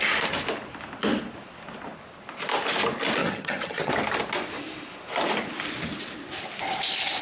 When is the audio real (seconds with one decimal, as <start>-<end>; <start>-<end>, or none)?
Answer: 0.0-3.2; 3.9-7.2